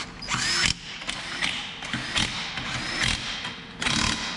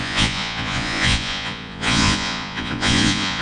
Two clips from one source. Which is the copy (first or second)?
second